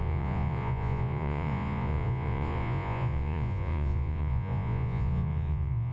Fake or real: fake